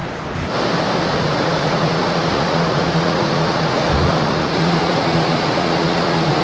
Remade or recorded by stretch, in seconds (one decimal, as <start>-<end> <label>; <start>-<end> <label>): 0.0-1.0 recorded; 1.0-6.4 remade